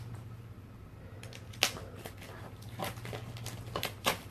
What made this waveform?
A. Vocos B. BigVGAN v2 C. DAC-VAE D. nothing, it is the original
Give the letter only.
D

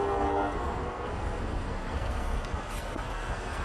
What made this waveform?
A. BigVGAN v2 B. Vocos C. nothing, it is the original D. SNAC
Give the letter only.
D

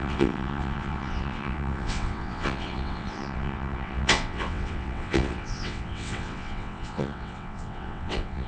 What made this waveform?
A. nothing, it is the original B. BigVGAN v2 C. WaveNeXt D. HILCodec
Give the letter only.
C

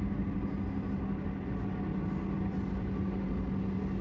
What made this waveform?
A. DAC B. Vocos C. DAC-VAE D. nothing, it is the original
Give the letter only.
D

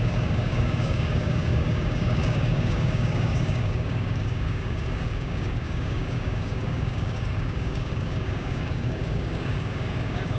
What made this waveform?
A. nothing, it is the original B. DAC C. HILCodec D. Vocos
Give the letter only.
B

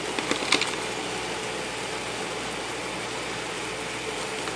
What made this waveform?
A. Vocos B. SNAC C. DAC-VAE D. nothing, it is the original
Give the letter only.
D